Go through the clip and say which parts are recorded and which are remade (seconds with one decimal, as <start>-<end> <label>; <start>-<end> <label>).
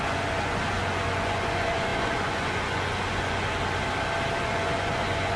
0.0-3.6 remade; 3.6-4.4 recorded; 4.4-5.4 remade